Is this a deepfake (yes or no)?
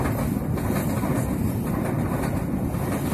no